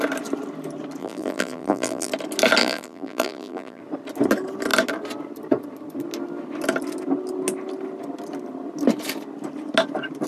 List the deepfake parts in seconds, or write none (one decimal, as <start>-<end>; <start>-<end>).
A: 1.0-2.1; 2.6-3.8